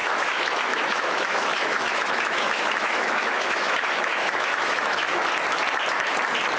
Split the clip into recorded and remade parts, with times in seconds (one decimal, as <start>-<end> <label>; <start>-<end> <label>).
0.0-5.2 remade; 5.2-6.6 recorded